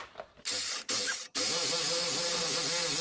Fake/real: real